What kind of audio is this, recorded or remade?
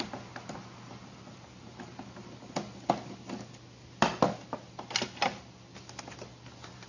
recorded